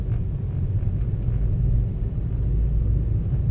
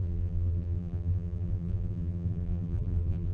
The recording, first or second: first